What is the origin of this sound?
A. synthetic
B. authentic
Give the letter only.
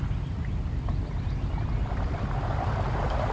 B